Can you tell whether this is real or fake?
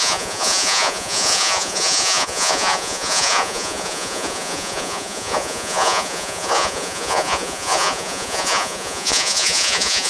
fake